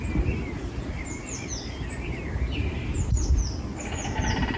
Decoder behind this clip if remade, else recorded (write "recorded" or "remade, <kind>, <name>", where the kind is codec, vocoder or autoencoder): recorded